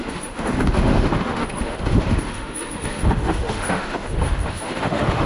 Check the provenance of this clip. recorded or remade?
remade